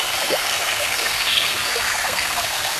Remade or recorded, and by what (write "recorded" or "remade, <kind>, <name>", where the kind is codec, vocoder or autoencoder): remade, codec, SNAC